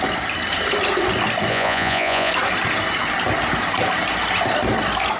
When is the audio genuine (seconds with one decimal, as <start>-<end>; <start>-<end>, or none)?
0.0-1.5; 2.3-5.2